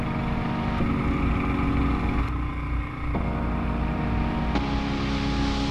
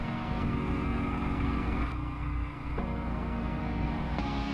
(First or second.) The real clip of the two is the first